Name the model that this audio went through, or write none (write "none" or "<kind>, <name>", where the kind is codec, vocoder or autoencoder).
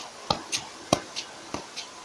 none